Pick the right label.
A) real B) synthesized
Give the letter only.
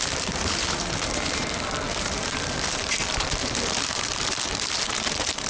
B